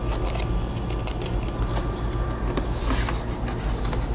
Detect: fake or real real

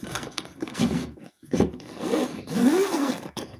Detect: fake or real fake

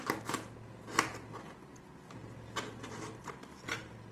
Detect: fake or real real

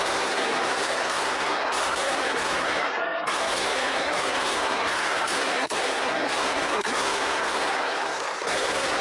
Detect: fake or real fake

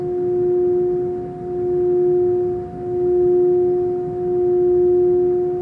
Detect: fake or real real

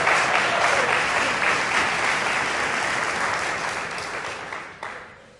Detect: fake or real real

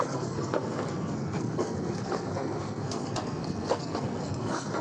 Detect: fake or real fake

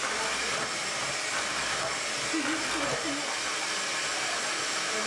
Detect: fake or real real